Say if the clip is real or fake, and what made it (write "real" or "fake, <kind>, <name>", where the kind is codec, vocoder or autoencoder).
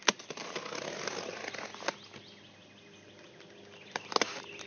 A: real